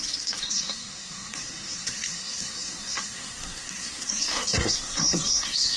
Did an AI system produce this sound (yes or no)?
yes